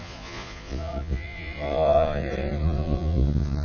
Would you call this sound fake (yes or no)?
yes